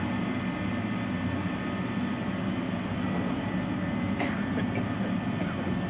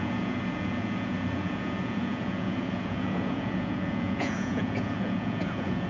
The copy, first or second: second